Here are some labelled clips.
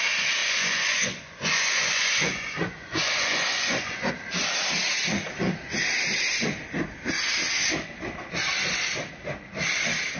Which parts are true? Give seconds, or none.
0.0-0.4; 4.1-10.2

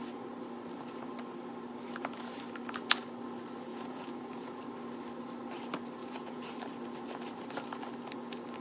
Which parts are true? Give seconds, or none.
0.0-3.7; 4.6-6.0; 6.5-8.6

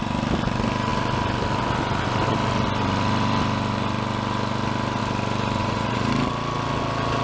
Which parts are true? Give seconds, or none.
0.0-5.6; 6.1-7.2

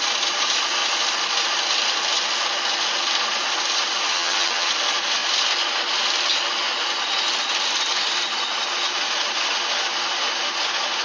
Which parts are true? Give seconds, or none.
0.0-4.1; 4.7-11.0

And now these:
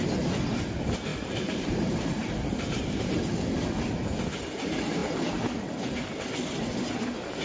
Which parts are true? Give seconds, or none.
0.0-1.1; 3.2-7.4

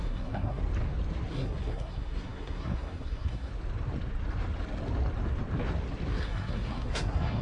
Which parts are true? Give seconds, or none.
0.6-1.3; 3.5-6.1